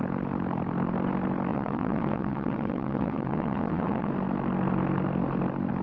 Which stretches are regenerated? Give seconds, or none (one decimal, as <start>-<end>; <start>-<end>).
1.5-4.1